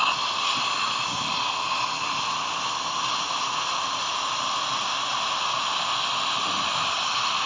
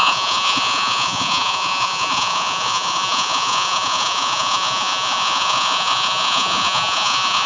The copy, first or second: second